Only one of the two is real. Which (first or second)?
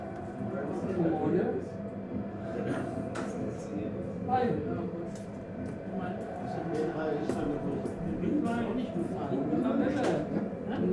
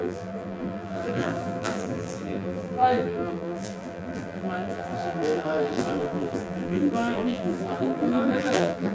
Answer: first